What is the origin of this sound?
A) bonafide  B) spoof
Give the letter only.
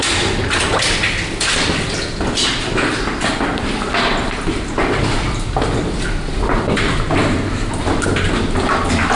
A